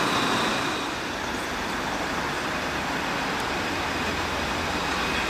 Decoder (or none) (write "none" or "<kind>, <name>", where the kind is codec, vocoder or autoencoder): none